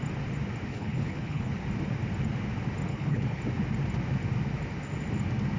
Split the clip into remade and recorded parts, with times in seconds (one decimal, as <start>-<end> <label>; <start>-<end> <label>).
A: 0.0-0.7 recorded; 0.7-1.5 remade; 1.5-2.9 recorded; 2.9-3.4 remade; 3.4-5.6 recorded